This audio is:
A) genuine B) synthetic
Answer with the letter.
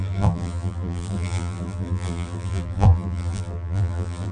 B